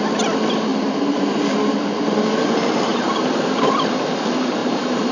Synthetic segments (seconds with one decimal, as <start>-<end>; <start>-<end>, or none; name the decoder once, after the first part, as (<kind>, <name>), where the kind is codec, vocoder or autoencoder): 0.7-2.0 (vocoder, BigVGAN v2); 2.9-3.7; 4.6-5.1